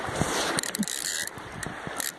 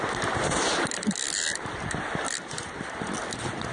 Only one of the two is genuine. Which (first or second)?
second